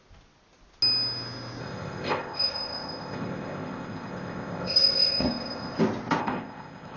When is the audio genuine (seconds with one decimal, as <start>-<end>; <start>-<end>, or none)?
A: 0.0-1.6; 5.8-6.2